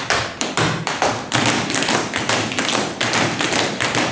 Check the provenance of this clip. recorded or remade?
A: remade